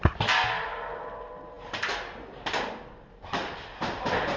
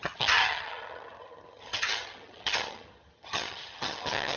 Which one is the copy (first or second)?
second